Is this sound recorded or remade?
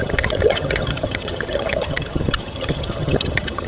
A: remade